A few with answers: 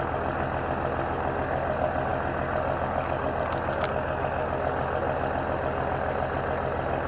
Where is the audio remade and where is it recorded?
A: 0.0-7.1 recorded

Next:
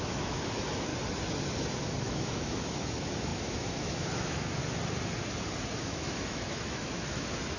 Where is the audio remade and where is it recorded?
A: 0.0-0.9 remade; 0.9-2.0 recorded; 2.0-4.6 remade; 4.6-5.8 recorded; 5.8-7.6 remade

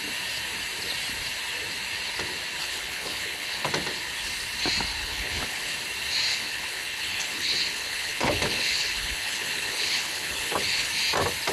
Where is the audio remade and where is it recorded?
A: 0.0-2.6 recorded; 2.6-3.7 remade; 3.7-5.0 recorded; 5.0-5.7 remade; 5.7-6.3 recorded; 6.3-10.9 remade; 10.9-11.5 recorded